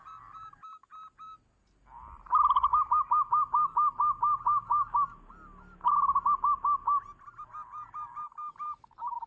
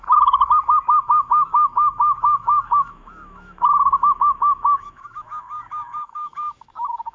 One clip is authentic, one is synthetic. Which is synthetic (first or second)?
second